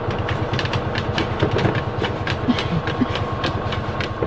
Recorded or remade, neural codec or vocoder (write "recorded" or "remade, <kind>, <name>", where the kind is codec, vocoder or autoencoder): recorded